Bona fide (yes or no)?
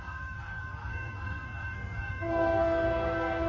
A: no